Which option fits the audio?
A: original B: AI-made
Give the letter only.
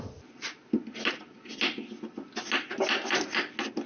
A